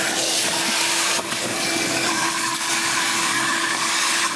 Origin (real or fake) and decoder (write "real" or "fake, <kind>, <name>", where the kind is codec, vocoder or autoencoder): fake, codec, DAC